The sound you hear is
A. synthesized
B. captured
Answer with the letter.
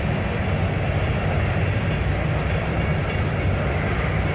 B